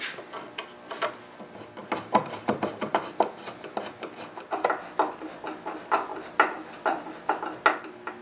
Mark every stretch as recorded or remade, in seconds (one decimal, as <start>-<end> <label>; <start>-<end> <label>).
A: 0.0-1.8 recorded; 1.8-4.2 remade; 4.2-6.1 recorded; 6.1-7.3 remade; 7.3-8.2 recorded